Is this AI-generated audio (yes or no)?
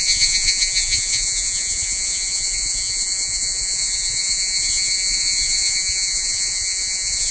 yes